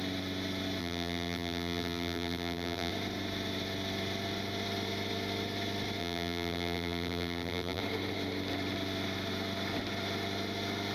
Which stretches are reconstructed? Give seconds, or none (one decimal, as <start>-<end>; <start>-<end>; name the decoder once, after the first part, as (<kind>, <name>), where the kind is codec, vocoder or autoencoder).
0.8-2.9 (vocoder, BigVGAN v2); 6.0-7.8

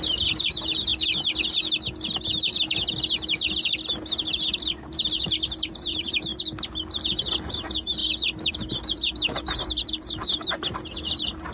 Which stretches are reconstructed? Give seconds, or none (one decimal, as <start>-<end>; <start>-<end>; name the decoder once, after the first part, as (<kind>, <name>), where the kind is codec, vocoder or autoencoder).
0.0-0.9 (vocoder, BigVGAN v2); 4.7-6.3; 7.2-8.0; 8.5-11.5

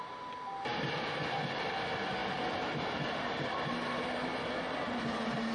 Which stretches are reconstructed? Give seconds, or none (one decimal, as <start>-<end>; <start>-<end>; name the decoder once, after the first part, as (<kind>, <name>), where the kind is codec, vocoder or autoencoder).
none

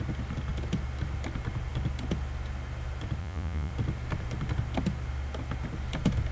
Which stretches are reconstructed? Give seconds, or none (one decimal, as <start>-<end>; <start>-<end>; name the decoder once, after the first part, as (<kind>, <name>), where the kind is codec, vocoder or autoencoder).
3.2-3.7 (vocoder, Vocos)